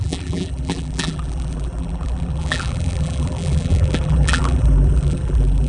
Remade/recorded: remade